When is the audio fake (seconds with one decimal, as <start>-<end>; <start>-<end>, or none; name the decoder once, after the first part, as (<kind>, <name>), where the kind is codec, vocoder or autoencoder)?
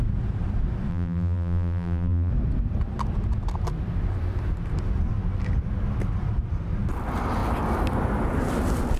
0.9-2.3 (vocoder, BigVGAN v2)